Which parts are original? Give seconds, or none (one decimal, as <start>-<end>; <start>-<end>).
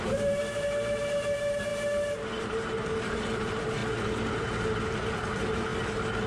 0.4-1.0; 1.7-2.4; 3.8-4.3; 5.7-6.3